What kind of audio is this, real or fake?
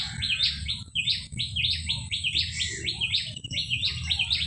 real